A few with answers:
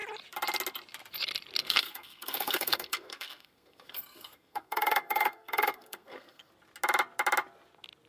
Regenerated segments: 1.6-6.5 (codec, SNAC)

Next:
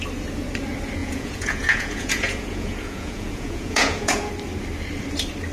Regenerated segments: 1.0-4.3 (vocoder, Vocos)

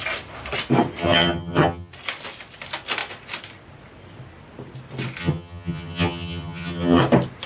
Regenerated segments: 1.0-1.9 (vocoder, HiFi-GAN); 5.2-7.0

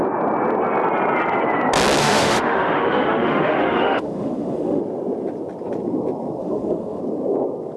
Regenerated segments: 2.0-4.8 (autoencoder, DAC-VAE); 6.4-7.0

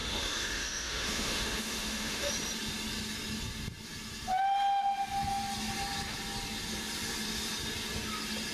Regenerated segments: 0.0-2.3 (autoencoder, DAC-VAE)

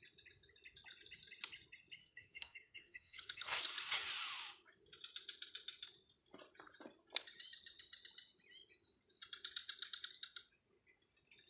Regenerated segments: 2.0-3.6 (codec, SNAC)

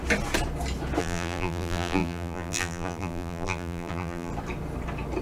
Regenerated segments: 1.0-4.3 (vocoder, BigVGAN v2)

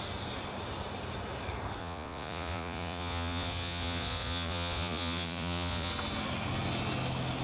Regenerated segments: 1.8-5.9 (vocoder, Vocos)